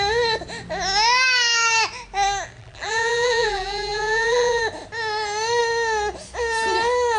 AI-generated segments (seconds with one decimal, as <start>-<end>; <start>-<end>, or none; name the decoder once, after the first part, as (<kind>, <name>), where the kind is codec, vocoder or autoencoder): 2.6-4.6 (vocoder, BigVGAN v2)